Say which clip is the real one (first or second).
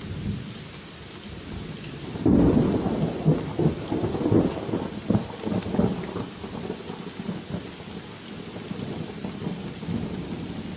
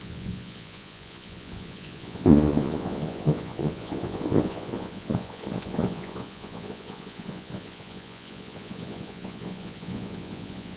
first